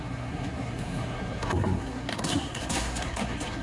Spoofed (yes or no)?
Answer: yes